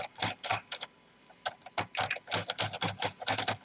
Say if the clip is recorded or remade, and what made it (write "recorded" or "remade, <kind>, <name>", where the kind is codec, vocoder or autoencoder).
recorded